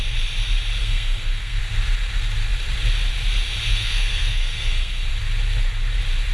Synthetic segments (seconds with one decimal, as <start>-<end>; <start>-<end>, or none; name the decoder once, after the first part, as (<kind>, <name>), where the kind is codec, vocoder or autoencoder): 0.8-1.6 (codec, SNAC); 3.7-5.1